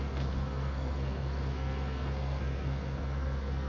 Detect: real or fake fake